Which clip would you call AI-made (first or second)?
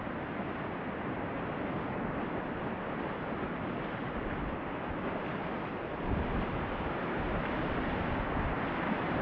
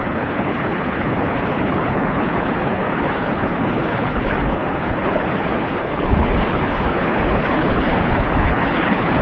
second